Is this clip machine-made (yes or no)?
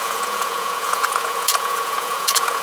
yes